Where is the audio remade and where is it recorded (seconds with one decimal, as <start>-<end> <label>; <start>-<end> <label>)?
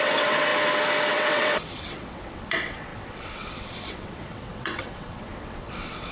0.0-0.5 remade; 0.5-1.1 recorded; 1.1-6.1 remade